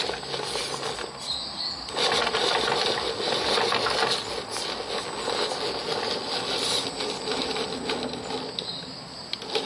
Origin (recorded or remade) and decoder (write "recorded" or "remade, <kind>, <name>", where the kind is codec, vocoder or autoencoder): recorded